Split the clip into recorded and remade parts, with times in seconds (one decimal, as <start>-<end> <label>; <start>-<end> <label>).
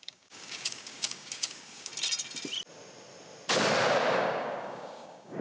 0.0-1.9 remade; 1.9-4.1 recorded; 4.1-5.4 remade